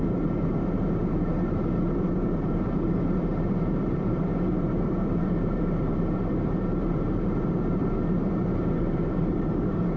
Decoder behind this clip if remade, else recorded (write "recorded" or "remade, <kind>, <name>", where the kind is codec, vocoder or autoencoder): remade, vocoder, BigVGAN v2